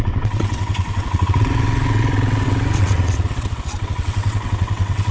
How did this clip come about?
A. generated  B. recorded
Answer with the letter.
A